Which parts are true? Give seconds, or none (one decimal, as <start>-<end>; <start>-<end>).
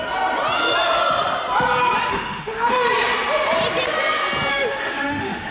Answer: 0.0-2.1; 2.9-4.5